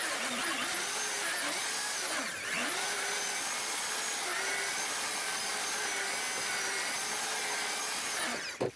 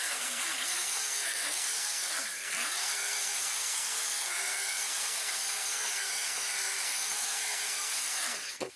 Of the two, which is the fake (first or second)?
second